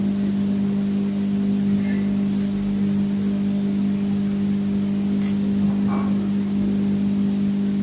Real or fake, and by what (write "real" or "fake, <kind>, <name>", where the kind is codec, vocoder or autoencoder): real